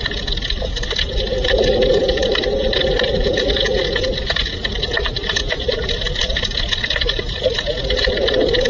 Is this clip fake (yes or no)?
no